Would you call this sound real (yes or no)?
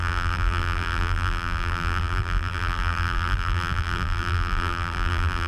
no